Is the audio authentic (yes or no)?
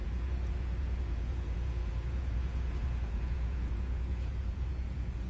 no